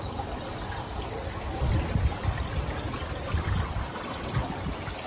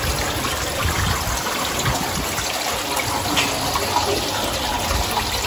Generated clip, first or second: first